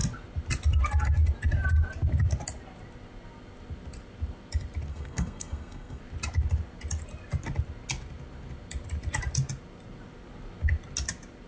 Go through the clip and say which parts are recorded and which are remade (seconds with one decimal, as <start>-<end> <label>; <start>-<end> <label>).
0.0-4.9 recorded; 4.9-6.0 remade; 6.0-11.5 recorded